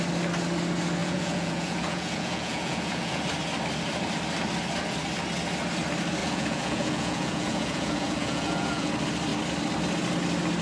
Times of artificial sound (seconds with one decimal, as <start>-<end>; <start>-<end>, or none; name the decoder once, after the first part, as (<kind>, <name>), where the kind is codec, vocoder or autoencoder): 1.0-3.2 (vocoder, Vocos); 6.2-8.9